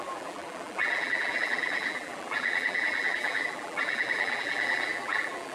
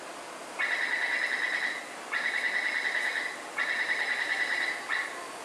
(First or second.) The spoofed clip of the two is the first